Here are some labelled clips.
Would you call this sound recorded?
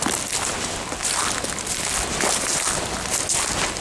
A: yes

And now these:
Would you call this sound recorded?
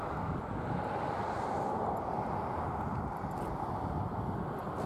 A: yes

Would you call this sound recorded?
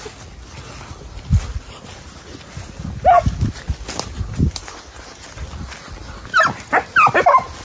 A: yes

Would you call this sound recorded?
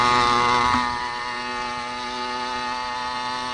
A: yes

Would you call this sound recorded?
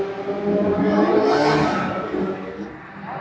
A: yes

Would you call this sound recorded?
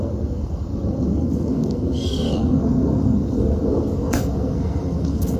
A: no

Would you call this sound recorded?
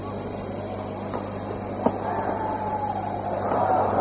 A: yes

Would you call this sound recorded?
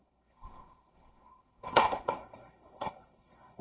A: no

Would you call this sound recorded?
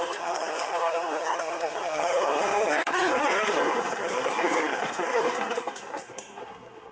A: no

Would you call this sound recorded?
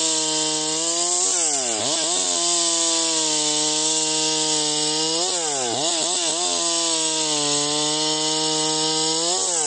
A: yes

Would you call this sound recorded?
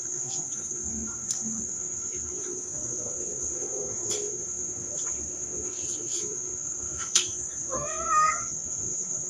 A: no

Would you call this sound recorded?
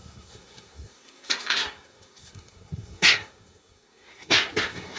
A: no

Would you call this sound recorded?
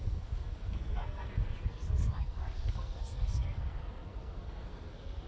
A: no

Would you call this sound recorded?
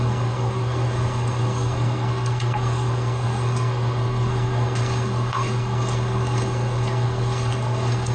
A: no